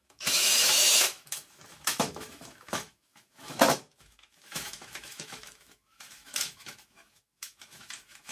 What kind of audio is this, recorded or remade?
remade